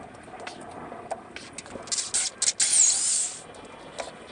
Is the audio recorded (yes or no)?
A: yes